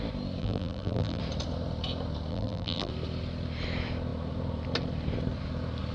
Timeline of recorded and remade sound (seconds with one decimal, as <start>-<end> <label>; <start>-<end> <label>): 0.0-0.4 recorded; 0.4-1.2 remade; 1.2-2.3 recorded; 2.3-2.9 remade; 2.9-5.9 recorded